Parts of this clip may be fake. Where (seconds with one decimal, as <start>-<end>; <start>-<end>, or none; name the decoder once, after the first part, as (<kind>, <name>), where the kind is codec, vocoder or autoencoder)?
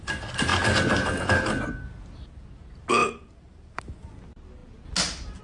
3.0-3.8 (vocoder, BigVGAN v2)